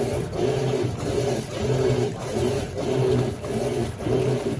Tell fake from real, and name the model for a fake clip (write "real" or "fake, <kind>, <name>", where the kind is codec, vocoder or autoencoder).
real